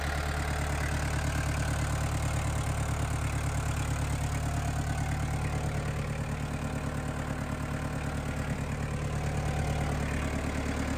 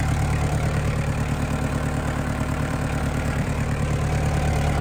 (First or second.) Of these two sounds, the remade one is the second